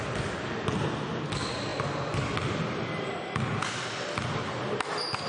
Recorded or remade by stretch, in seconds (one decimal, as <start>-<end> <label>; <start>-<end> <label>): 0.0-5.3 recorded